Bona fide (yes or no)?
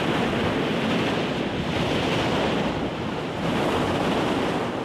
yes